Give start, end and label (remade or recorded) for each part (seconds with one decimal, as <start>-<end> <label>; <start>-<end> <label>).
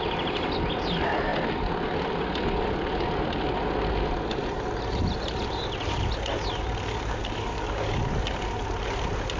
0.0-7.2 recorded; 7.2-7.9 remade; 7.9-9.4 recorded